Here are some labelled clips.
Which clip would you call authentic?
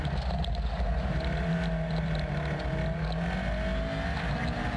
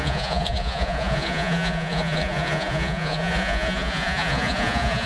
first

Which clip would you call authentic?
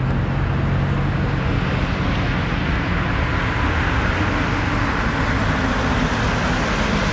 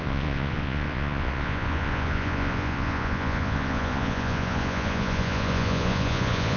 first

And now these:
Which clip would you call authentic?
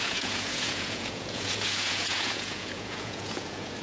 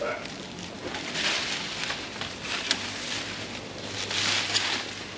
second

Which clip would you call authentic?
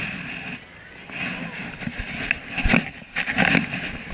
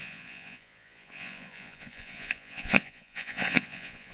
first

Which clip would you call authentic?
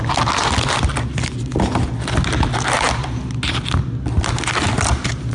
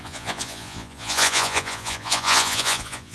first